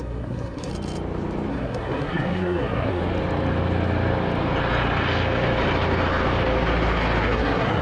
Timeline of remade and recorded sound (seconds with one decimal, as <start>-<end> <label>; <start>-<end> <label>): 0.0-0.7 remade; 0.7-1.5 recorded; 1.5-3.0 remade; 3.0-7.2 recorded; 7.2-7.8 remade